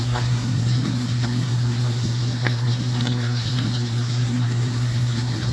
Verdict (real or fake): fake